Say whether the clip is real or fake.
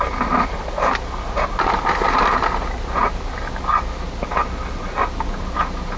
real